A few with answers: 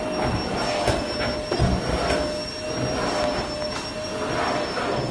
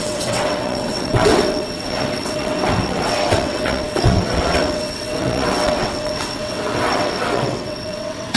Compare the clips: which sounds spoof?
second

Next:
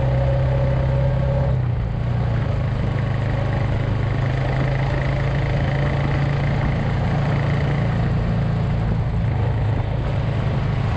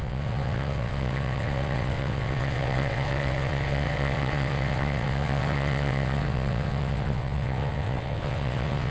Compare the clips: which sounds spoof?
second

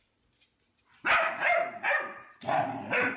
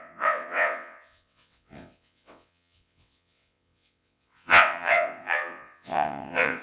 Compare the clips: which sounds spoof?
second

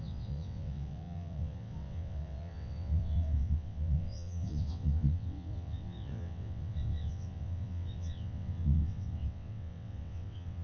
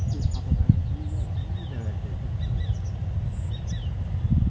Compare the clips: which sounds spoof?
first